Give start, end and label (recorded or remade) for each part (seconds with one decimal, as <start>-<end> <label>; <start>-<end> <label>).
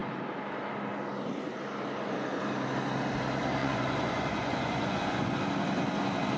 0.0-3.6 recorded; 3.6-5.4 remade; 5.4-6.4 recorded